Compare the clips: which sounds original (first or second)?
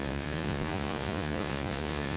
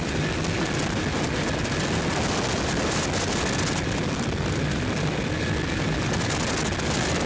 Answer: second